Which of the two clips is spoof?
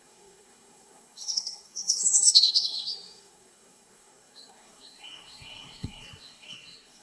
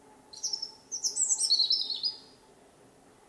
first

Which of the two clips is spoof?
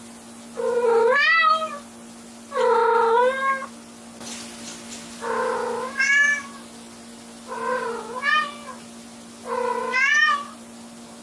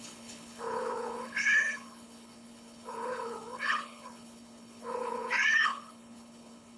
second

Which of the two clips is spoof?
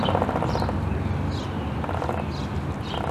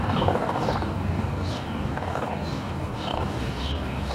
second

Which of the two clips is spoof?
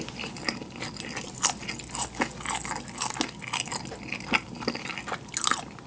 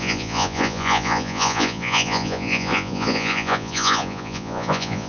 second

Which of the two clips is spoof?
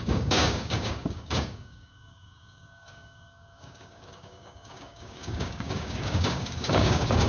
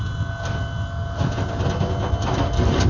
first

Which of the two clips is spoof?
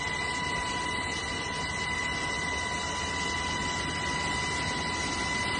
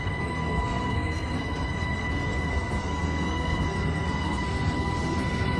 second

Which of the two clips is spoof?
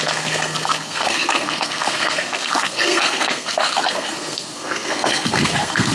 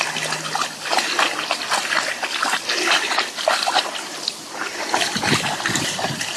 first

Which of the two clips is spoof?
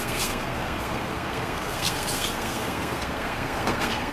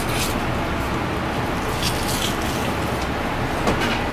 first